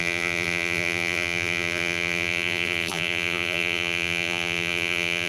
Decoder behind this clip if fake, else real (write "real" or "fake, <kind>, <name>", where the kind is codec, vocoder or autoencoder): fake, vocoder, BigVGAN v2